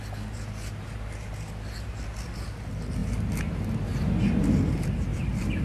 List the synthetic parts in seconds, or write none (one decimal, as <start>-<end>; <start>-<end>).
5.1-5.6